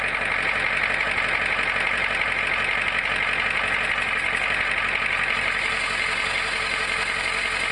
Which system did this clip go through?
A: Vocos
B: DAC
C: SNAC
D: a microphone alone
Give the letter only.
D